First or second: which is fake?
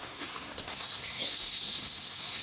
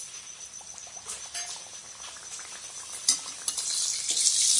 first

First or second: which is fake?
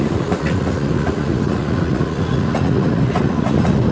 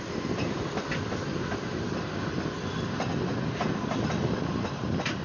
first